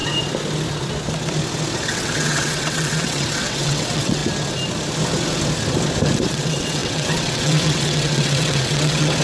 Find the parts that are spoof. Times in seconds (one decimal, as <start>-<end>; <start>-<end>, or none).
1.9-4.2; 6.3-9.2